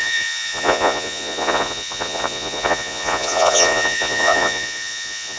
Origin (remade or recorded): remade